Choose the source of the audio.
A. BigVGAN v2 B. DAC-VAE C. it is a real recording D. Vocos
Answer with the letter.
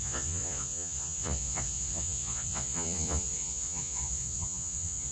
D